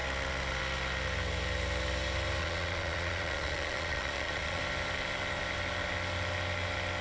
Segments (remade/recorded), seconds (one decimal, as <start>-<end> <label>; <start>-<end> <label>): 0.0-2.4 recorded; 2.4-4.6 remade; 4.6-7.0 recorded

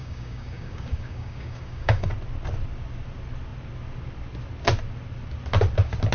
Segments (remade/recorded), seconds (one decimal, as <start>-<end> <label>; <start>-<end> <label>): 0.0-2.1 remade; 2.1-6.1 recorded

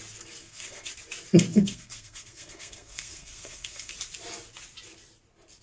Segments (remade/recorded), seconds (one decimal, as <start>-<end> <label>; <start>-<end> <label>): 0.0-0.4 recorded; 0.4-0.9 remade; 0.9-1.5 recorded; 1.5-3.9 remade; 3.9-5.6 recorded

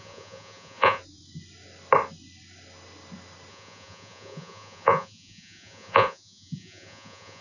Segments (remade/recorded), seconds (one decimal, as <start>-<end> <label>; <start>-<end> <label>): 0.0-1.0 remade; 1.0-3.5 recorded; 3.5-7.4 remade

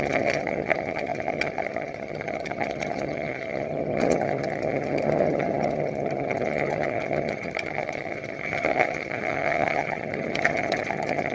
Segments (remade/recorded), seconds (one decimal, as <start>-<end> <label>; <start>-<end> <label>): 0.0-11.3 remade